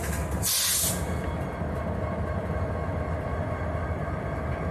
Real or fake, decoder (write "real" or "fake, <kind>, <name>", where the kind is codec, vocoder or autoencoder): real